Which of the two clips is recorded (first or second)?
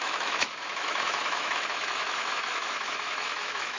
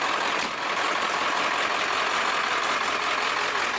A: second